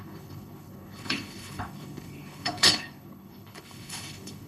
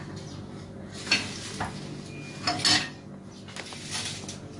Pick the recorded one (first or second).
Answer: second